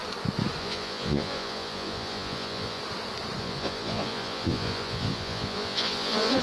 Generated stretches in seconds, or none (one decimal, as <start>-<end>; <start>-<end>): 0.6-2.8; 3.4-6.4